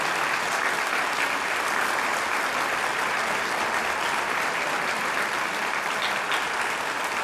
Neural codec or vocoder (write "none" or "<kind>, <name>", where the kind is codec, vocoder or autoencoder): none